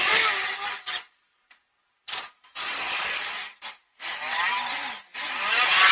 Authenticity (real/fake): real